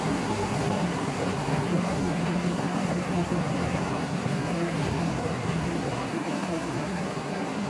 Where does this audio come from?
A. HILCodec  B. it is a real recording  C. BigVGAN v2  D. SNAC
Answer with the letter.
D